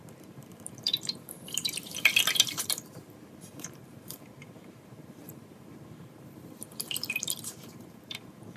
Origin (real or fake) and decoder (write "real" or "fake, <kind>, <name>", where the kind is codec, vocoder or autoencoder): fake, vocoder, BigVGAN v2